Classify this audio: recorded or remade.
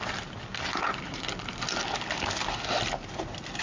recorded